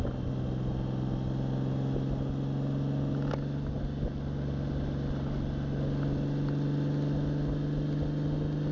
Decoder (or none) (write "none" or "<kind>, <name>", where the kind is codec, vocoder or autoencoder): none